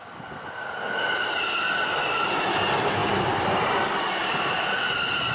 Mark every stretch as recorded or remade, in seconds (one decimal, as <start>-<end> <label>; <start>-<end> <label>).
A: 0.0-3.0 recorded; 3.0-5.3 remade